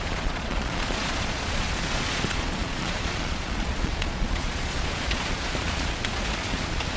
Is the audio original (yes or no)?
no